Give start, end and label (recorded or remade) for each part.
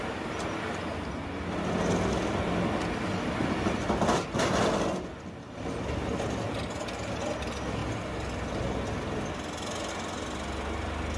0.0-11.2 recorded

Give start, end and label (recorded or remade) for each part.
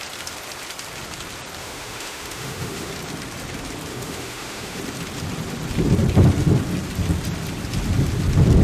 0.0-1.6 recorded; 1.6-2.9 remade; 2.9-3.9 recorded; 3.9-4.8 remade; 4.8-8.6 recorded